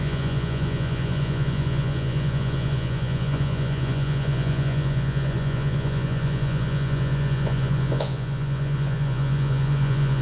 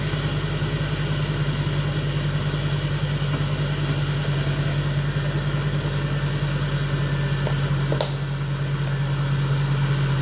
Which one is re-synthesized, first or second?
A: first